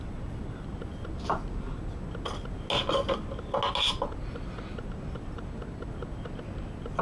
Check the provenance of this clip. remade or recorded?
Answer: recorded